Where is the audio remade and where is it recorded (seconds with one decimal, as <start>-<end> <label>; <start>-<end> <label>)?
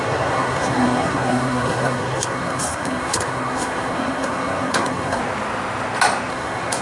0.0-5.2 remade; 5.2-6.3 recorded; 6.3-6.8 remade